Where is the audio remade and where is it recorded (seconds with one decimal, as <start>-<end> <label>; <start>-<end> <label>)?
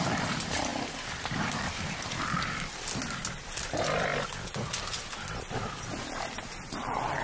0.0-7.2 recorded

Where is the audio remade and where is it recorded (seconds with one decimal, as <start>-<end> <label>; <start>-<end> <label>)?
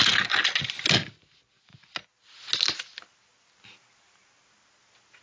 0.0-5.2 recorded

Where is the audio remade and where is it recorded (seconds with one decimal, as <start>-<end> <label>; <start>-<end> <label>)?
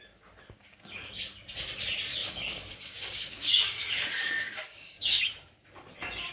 0.0-0.6 recorded; 0.6-1.2 remade; 1.2-2.2 recorded; 2.2-5.2 remade; 5.2-6.3 recorded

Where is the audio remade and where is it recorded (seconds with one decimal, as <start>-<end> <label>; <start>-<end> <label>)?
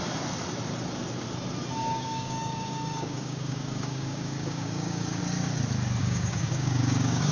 0.0-1.8 recorded; 1.8-5.2 remade; 5.2-6.0 recorded; 6.0-7.3 remade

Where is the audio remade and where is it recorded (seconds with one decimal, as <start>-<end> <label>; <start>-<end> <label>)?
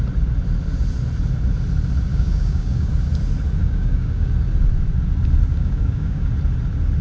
0.0-2.1 recorded; 2.1-2.9 remade; 2.9-3.6 recorded; 3.6-4.3 remade; 4.3-5.5 recorded; 5.5-6.3 remade; 6.3-7.0 recorded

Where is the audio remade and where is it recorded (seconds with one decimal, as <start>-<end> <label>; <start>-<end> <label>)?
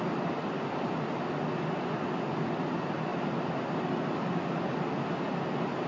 0.0-5.9 recorded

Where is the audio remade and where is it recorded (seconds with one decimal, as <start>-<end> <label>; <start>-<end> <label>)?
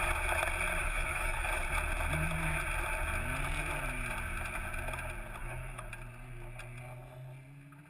0.0-0.8 recorded; 0.8-1.6 remade; 1.6-5.4 recorded; 5.4-5.9 remade; 5.9-7.9 recorded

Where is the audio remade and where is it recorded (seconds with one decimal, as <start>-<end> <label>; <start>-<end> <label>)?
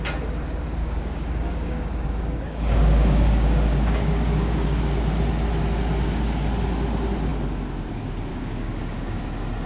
0.0-0.8 recorded; 0.8-4.8 remade; 4.8-8.3 recorded; 8.3-9.2 remade; 9.2-9.7 recorded